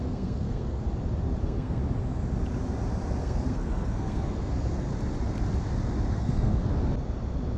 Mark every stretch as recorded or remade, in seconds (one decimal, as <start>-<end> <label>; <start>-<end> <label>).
0.0-0.8 remade; 0.8-1.4 recorded; 1.4-1.8 remade; 1.8-3.2 recorded; 3.2-4.9 remade; 4.9-6.1 recorded; 6.1-6.7 remade; 6.7-7.6 recorded